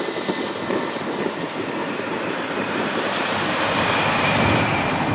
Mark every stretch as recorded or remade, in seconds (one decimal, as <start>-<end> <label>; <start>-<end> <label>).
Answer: 0.0-1.8 recorded; 1.8-5.1 remade